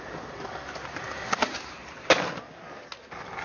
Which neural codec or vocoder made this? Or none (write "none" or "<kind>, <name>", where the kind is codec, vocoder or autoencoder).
none